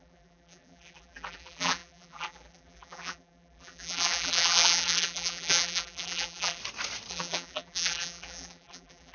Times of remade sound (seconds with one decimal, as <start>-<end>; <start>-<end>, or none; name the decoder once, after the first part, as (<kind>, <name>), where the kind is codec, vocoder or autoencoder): 0.0-6.6 (vocoder, BigVGAN v2); 7.1-9.1